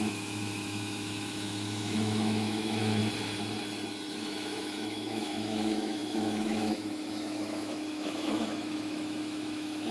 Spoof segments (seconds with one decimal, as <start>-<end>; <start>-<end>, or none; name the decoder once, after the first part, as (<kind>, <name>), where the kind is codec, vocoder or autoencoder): 0.0-3.0 (autoencoder, DAC-VAE); 4.1-9.9